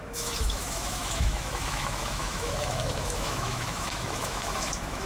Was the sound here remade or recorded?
remade